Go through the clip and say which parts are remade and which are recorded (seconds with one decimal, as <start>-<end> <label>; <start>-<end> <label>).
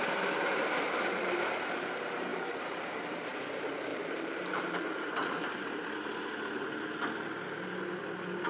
0.0-2.3 recorded; 2.3-2.9 remade; 2.9-3.9 recorded; 3.9-5.6 remade; 5.6-8.5 recorded